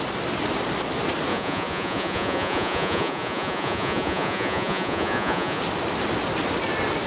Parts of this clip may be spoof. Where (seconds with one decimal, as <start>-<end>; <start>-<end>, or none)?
1.3-5.6

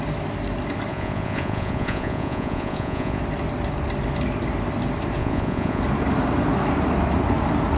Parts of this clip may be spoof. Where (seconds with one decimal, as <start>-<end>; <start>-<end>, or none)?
0.9-3.2; 5.2-5.8

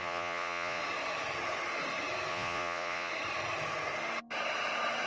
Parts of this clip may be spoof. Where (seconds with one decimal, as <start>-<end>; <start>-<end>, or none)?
0.0-0.8; 2.3-3.1

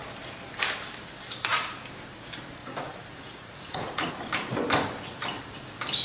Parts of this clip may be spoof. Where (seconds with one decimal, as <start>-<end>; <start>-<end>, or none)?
2.6-4.1